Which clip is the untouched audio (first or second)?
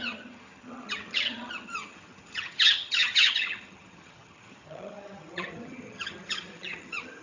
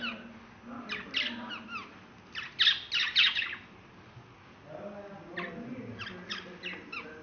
second